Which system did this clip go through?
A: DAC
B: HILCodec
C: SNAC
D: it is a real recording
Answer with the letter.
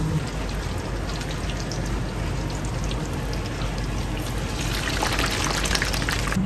D